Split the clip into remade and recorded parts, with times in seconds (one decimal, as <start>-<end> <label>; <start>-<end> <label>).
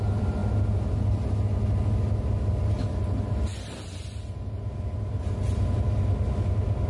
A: 0.0-6.9 recorded